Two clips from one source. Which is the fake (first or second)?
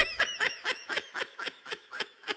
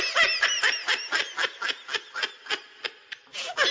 first